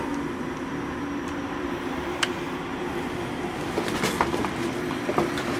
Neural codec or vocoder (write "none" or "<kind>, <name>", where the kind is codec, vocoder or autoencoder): vocoder, BigVGAN v2